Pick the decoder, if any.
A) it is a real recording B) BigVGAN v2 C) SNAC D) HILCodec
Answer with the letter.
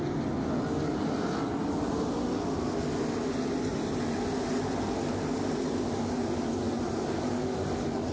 A